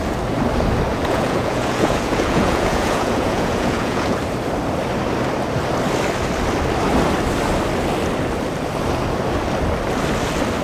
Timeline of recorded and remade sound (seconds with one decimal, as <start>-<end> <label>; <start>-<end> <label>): 0.0-0.9 recorded; 0.9-4.2 remade; 4.2-10.6 recorded